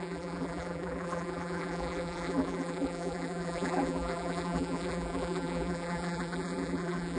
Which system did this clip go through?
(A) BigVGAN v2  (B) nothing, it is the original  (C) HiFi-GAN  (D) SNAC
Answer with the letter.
A